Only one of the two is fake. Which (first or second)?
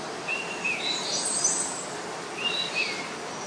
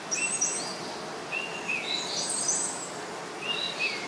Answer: first